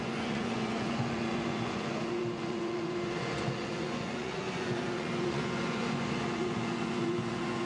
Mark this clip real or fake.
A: fake